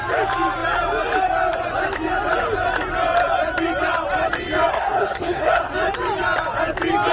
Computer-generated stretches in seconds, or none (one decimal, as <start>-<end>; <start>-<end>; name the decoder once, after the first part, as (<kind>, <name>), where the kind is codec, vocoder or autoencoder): 4.7-5.6 (codec, SNAC)